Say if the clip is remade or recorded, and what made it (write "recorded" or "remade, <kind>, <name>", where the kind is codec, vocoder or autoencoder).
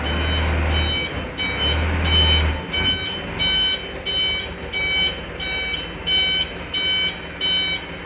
recorded